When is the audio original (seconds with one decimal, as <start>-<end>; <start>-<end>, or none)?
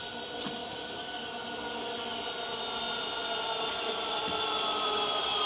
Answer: 0.0-0.6; 1.2-5.5